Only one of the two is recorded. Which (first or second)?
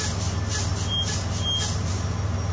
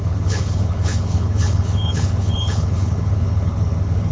first